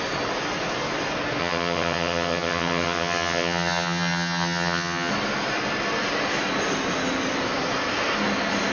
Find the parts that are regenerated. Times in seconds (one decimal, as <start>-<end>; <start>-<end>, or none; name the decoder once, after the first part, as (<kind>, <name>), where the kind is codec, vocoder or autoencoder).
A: 1.4-5.1 (vocoder, HiFi-GAN)